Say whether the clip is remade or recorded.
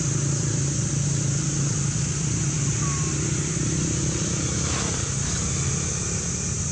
recorded